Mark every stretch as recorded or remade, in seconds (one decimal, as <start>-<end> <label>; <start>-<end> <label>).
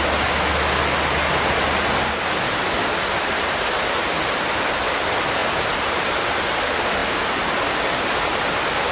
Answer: 0.0-8.9 recorded